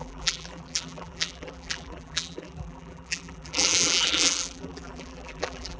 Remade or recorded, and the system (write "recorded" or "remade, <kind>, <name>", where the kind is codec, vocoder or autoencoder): remade, vocoder, BigVGAN v2